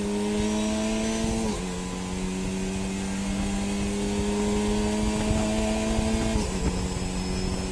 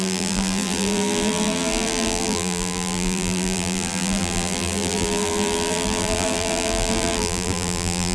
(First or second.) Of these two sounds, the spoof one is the second